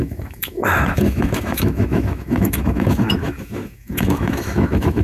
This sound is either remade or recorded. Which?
remade